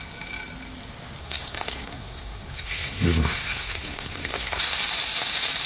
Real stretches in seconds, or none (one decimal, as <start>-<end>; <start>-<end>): 0.0-1.2; 4.6-5.7